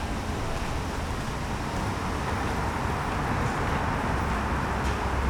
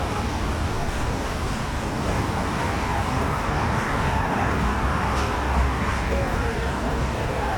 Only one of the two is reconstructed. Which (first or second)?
second